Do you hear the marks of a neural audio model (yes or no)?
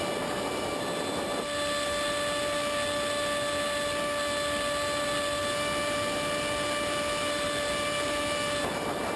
no